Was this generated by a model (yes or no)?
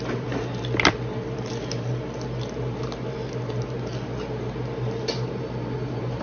no